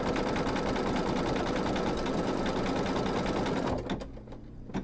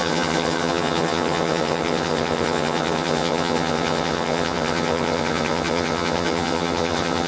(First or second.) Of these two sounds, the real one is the first